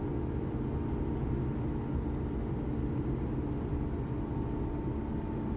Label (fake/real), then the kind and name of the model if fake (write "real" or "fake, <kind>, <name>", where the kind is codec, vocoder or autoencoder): real